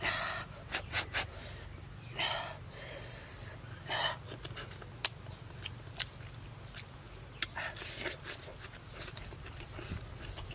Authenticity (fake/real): real